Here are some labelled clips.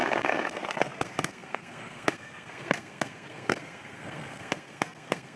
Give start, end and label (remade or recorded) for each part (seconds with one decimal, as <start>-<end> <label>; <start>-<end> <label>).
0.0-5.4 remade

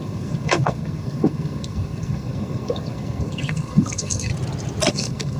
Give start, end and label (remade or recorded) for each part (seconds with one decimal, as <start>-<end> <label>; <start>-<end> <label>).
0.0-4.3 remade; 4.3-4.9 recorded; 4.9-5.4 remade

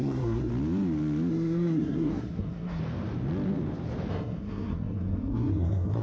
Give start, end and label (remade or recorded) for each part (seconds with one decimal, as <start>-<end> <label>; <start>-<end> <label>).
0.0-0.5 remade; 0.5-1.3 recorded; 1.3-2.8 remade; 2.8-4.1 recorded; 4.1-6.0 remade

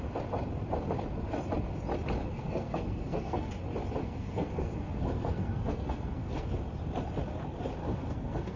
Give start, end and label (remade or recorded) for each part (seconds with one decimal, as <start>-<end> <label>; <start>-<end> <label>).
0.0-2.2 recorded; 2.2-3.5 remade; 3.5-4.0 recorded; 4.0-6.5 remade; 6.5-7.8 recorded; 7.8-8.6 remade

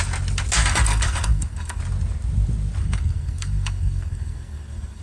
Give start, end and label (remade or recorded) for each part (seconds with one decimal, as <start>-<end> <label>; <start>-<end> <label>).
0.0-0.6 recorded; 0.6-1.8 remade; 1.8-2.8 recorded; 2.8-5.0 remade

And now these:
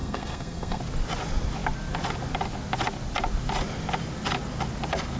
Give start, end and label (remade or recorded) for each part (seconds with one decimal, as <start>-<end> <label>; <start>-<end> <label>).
0.0-0.8 remade; 0.8-5.2 recorded

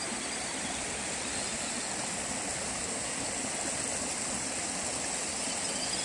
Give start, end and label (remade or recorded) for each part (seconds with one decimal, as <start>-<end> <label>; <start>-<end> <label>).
0.0-6.0 recorded